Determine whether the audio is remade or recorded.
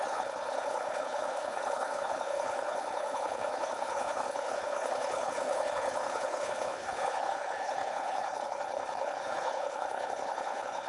remade